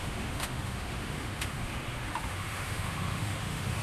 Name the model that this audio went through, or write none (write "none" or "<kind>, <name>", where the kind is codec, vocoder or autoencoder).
autoencoder, DAC-VAE